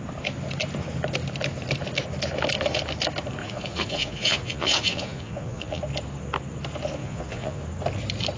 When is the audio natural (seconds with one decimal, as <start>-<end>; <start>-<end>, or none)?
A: 0.0-3.4; 5.8-7.0; 7.6-8.4